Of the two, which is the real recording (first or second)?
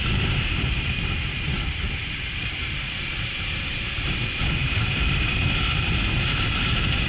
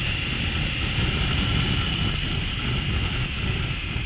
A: second